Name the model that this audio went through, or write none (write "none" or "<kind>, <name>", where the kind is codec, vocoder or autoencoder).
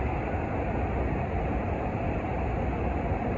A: none